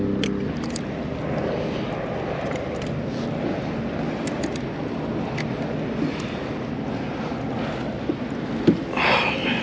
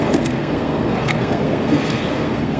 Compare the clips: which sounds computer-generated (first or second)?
second